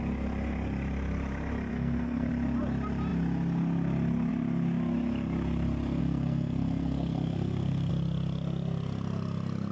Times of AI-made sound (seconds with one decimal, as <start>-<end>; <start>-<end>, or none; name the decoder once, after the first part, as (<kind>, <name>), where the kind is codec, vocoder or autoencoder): 1.7-2.3 (codec, SNAC); 6.0-7.9